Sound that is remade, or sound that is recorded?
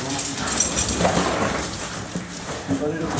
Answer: remade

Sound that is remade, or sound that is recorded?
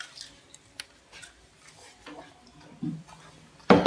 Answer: recorded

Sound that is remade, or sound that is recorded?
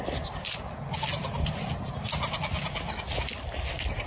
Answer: recorded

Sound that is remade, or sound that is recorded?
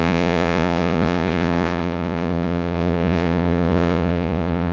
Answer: remade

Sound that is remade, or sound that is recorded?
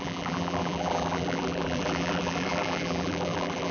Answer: remade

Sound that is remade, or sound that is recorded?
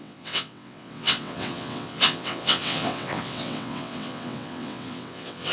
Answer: remade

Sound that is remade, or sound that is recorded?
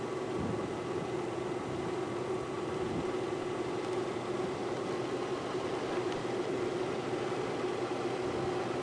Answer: recorded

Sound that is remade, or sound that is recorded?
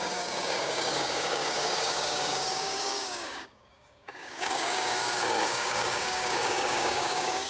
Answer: remade